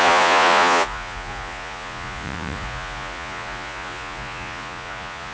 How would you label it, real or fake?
fake